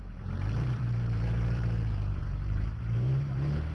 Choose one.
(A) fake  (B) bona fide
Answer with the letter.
A